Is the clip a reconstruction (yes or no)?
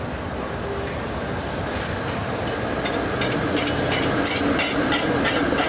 no